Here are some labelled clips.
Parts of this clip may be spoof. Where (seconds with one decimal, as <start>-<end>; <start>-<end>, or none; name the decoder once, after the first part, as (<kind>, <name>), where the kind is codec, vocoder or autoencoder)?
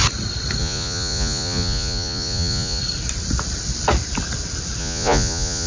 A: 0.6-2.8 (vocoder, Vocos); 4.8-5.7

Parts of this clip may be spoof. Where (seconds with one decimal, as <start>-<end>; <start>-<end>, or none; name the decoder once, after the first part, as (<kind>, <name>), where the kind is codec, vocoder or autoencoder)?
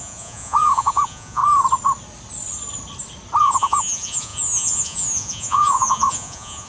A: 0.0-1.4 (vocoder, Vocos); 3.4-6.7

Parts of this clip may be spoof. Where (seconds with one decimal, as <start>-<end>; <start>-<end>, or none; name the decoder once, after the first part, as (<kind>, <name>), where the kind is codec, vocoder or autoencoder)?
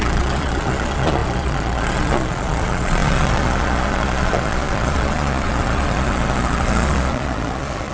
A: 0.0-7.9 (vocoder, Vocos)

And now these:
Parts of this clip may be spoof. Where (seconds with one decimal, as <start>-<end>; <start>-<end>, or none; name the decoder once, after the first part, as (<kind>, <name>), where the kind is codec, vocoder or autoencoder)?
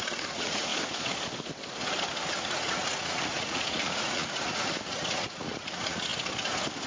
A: 0.0-0.7 (vocoder, Vocos); 2.3-6.1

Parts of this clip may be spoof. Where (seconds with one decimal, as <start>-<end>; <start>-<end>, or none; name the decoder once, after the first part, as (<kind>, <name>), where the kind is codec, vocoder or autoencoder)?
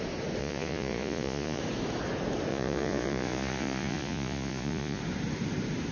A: 0.4-1.6 (vocoder, Vocos); 2.5-5.0